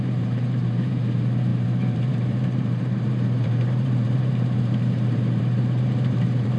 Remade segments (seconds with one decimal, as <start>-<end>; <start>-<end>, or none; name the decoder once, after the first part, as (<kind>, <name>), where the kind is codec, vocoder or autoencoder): 0.0-6.6 (vocoder, BigVGAN v2)

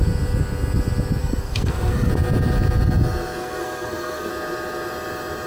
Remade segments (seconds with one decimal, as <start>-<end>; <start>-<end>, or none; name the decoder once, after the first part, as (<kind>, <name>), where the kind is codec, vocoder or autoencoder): 1.2-2.1 (codec, SNAC); 3.4-4.3

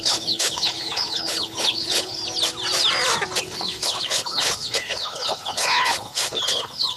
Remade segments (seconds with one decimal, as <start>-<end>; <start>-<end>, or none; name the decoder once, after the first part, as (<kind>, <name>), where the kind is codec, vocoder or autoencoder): 0.0-2.2 (codec, HILCodec); 3.4-7.0

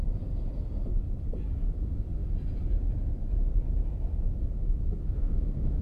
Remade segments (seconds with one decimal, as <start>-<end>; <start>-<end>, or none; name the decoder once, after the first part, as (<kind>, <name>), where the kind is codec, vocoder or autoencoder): 5.2-5.8 (codec, SNAC)